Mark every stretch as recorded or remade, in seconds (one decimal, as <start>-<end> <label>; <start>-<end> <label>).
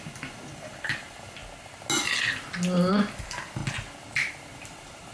0.0-1.4 remade; 1.4-3.1 recorded; 3.1-3.6 remade; 3.6-4.5 recorded; 4.5-5.1 remade